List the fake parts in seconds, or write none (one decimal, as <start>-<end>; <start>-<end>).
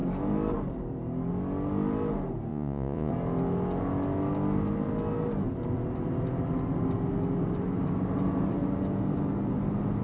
2.5-3.1